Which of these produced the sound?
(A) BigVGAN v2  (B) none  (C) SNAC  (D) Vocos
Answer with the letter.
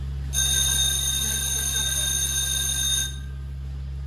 B